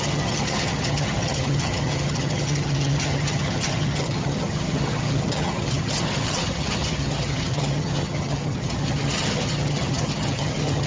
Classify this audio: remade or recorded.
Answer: remade